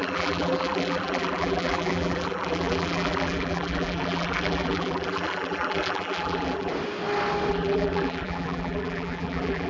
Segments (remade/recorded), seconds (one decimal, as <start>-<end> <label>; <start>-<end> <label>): 0.0-6.7 remade; 6.7-7.5 recorded; 7.5-9.7 remade